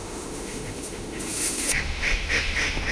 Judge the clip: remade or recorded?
remade